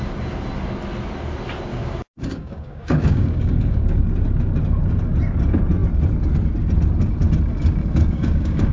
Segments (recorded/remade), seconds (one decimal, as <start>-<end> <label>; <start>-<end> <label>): 0.0-1.7 recorded; 1.7-4.0 remade; 4.0-7.8 recorded; 7.8-8.7 remade